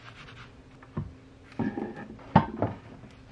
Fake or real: real